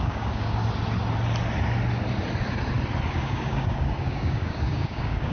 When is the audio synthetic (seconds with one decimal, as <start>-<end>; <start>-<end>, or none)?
0.0-0.6; 3.1-5.3

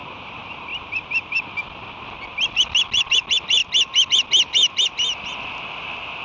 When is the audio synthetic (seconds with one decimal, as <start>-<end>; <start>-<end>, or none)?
none

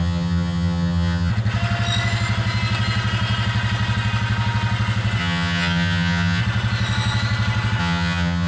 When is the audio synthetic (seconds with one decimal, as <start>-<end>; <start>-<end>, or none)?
0.0-1.3; 5.2-6.4; 7.8-8.5